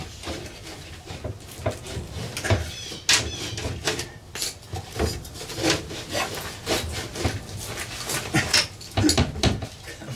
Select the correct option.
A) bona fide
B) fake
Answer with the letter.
A